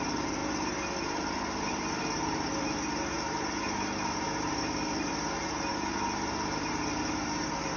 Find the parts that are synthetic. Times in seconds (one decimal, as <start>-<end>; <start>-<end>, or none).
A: 0.0-7.8